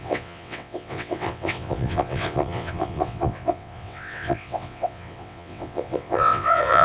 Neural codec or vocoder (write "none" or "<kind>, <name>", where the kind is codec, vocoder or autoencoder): vocoder, WaveNeXt